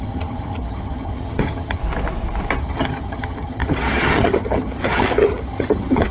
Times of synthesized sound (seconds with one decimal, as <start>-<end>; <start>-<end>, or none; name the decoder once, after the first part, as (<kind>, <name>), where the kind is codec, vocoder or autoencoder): 0.0-1.8 (vocoder, HiFi-GAN); 2.6-6.1